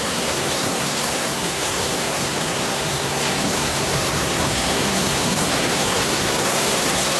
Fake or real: fake